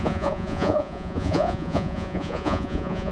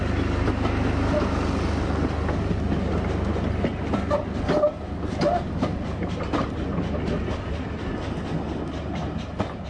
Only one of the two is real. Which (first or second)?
second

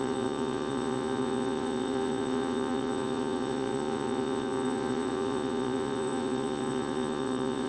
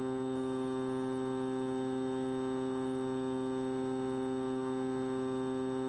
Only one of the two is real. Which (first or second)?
second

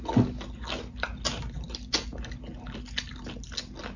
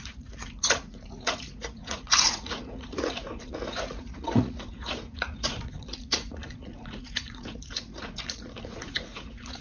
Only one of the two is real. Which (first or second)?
first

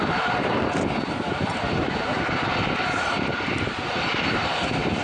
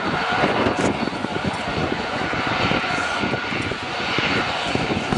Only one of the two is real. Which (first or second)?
first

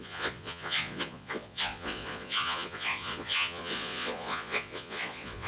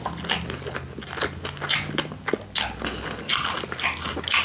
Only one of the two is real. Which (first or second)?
second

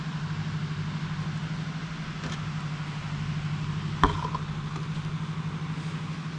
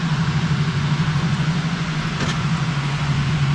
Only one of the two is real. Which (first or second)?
first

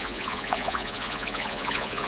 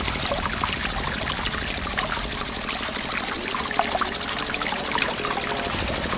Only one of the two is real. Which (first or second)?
second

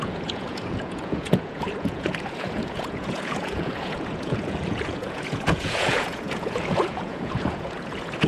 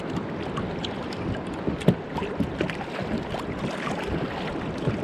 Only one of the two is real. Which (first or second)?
second